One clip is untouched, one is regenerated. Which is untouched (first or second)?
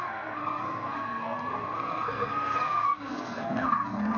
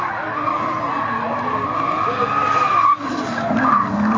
second